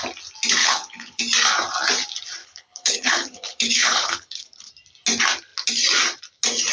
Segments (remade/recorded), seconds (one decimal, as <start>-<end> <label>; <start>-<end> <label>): 0.0-0.6 recorded; 0.6-1.2 remade; 1.2-2.4 recorded; 2.4-4.7 remade; 4.7-6.7 recorded